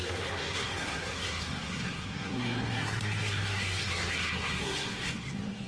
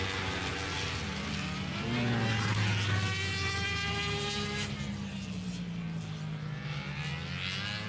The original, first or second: second